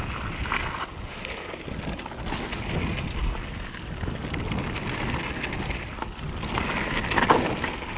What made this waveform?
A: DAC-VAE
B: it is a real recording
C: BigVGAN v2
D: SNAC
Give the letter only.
B